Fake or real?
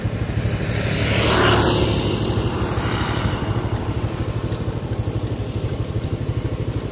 real